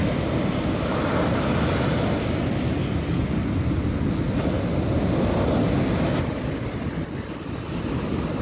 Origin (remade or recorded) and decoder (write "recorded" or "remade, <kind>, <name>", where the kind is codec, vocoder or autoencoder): recorded